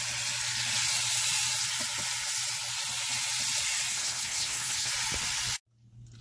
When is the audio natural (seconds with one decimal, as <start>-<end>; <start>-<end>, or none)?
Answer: 0.0-3.9; 4.9-6.2